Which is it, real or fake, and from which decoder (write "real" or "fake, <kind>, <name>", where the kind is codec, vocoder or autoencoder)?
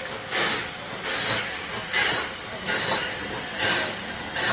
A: real